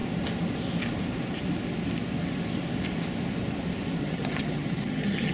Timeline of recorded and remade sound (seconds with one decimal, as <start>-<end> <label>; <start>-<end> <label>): 0.0-4.0 recorded; 4.0-5.3 remade